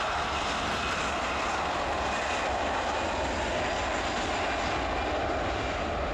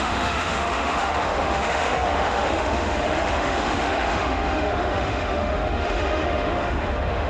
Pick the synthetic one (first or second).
second